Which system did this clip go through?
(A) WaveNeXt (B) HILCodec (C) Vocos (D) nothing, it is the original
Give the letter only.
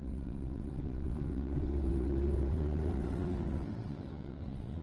A